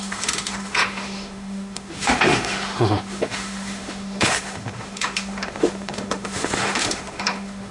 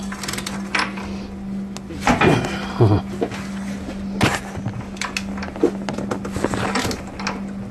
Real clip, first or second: second